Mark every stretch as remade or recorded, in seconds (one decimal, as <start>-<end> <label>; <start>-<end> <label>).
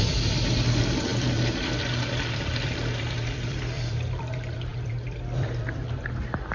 0.0-6.5 remade